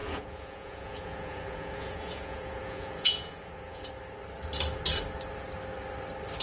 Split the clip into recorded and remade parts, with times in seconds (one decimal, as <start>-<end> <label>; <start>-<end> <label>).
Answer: 0.0-3.8 remade; 3.8-6.4 recorded